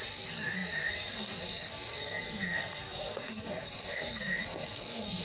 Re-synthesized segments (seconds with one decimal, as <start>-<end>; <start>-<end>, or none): 0.0-5.2